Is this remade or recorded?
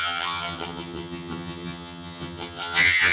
remade